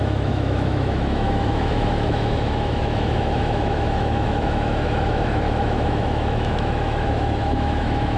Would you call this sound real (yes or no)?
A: no